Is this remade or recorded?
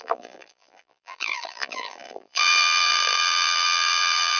remade